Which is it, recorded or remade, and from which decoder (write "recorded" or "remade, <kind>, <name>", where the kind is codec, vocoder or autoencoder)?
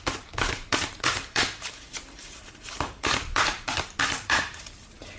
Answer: remade, vocoder, BigVGAN v2